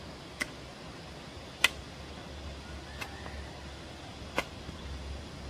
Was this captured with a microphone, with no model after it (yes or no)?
yes